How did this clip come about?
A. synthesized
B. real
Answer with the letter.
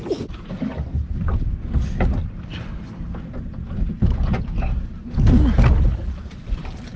B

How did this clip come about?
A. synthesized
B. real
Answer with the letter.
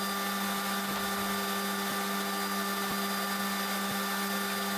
B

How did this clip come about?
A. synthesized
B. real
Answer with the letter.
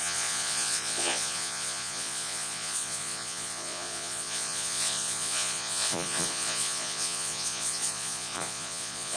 A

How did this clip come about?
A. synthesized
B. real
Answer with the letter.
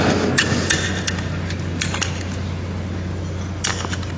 B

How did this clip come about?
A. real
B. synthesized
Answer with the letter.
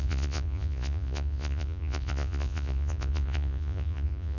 B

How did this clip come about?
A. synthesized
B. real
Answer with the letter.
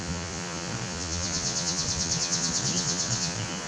A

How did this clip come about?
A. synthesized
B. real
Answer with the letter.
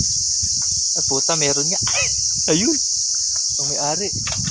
B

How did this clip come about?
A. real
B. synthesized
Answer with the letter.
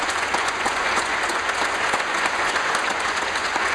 B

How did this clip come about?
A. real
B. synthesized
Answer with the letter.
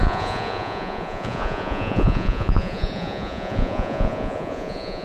B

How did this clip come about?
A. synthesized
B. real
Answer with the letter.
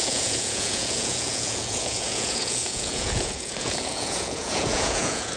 A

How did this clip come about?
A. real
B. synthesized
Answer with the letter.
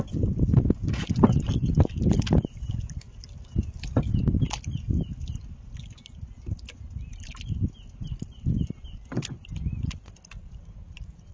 A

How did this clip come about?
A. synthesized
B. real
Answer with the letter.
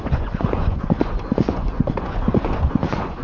A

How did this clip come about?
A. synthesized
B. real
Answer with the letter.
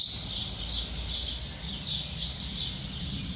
B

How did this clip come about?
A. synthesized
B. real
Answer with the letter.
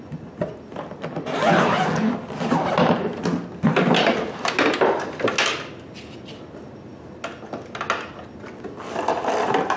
B